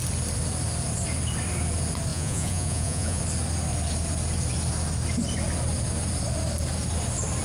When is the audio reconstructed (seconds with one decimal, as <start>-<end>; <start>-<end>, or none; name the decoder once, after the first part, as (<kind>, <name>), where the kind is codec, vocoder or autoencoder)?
2.1-3.2 (vocoder, Vocos)